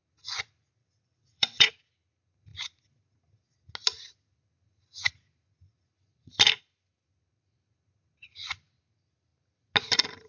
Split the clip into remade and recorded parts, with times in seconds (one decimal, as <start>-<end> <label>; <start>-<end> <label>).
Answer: 0.0-0.8 recorded; 0.8-1.7 remade; 1.7-10.3 recorded